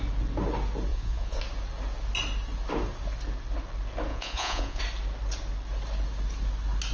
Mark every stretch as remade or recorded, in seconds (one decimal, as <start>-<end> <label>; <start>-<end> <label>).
0.0-0.9 recorded; 0.9-1.4 remade; 1.4-4.1 recorded; 4.1-4.8 remade; 4.8-6.9 recorded